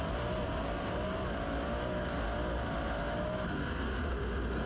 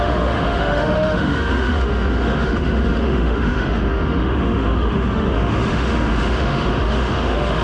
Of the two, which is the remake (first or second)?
second